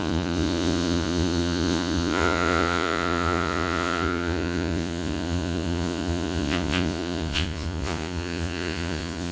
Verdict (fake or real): fake